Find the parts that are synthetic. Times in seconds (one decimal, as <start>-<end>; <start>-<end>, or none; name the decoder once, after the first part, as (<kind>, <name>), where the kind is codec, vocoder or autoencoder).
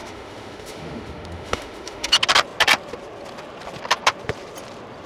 0.0-2.1 (autoencoder, DAC-VAE)